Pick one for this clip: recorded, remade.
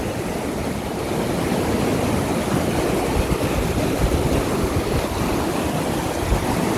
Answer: recorded